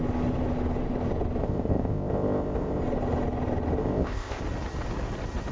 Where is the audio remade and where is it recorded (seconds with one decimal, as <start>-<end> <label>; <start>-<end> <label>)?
0.0-1.4 recorded; 1.4-2.8 remade; 2.8-3.8 recorded; 3.8-4.4 remade; 4.4-5.5 recorded